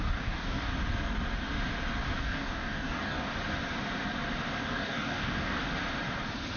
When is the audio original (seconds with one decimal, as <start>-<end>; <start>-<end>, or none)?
0.7-2.2; 3.4-4.6; 5.6-6.6